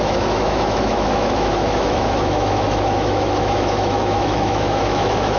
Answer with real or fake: fake